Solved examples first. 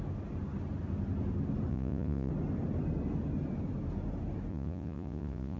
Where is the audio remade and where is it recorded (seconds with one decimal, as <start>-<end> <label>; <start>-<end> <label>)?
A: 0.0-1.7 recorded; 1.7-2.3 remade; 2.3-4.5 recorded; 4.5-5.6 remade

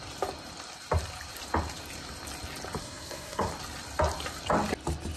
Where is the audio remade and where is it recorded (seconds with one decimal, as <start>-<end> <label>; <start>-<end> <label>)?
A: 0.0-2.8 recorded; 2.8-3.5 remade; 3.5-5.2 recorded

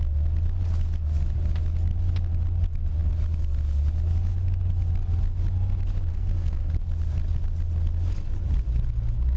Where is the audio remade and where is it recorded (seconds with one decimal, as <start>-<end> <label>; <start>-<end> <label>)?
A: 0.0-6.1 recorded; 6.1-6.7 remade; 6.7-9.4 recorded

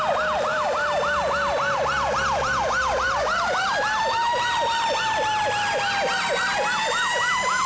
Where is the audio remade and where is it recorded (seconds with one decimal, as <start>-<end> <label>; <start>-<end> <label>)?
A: 0.0-7.7 remade